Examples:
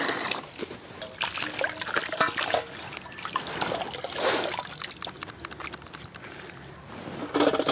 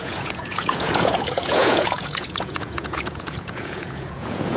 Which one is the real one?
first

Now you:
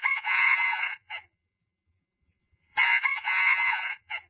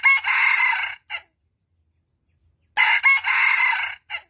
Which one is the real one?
second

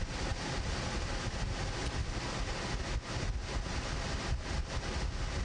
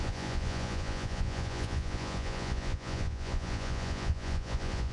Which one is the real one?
first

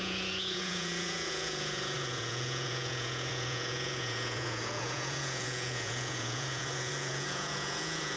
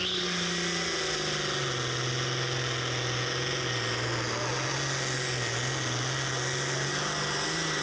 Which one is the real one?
second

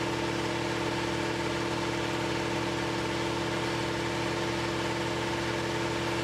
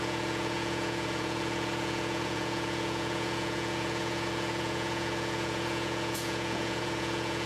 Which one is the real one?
first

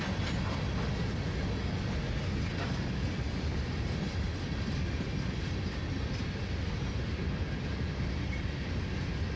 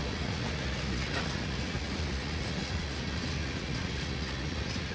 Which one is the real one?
first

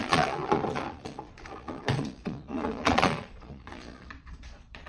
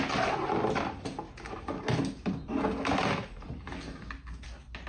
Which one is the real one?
second